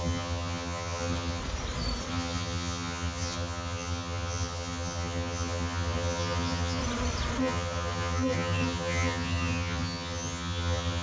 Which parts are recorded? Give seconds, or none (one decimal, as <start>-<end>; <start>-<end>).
1.4-2.1; 6.8-7.4